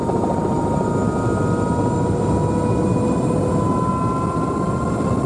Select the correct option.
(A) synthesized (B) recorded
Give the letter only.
B